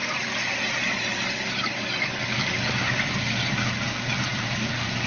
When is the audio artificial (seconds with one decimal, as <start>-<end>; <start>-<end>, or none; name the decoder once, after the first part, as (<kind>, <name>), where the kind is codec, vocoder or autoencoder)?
0.0-3.1 (vocoder, BigVGAN v2); 4.3-5.1